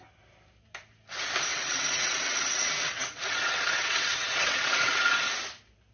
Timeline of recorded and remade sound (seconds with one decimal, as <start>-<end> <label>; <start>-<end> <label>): 0.0-1.5 recorded; 1.5-5.0 remade; 5.0-5.9 recorded

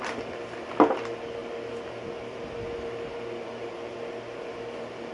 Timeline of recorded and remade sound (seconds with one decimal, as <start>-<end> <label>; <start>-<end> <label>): 0.0-5.1 recorded

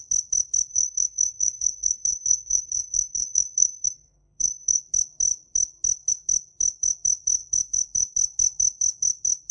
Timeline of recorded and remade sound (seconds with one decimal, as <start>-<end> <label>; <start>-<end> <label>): 0.0-0.7 recorded; 0.7-4.8 remade; 4.8-9.5 recorded

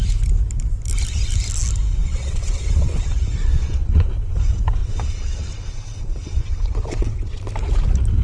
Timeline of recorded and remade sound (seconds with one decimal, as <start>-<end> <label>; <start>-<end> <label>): 0.0-2.0 recorded; 2.0-3.0 remade; 3.0-3.5 recorded; 3.5-4.1 remade; 4.1-4.8 recorded; 4.8-7.4 remade; 7.4-8.2 recorded

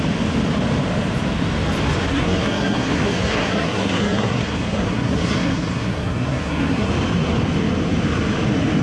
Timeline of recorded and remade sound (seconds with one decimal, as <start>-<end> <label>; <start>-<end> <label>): 0.0-2.1 recorded; 2.1-6.9 remade; 6.9-8.8 recorded

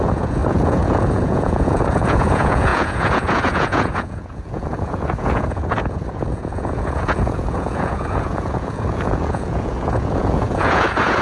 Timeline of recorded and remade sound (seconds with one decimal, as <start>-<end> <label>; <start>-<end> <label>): 0.0-11.2 remade

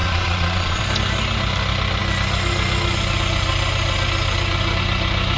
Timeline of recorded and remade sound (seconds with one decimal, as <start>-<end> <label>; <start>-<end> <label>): 0.0-0.8 remade; 0.8-5.4 recorded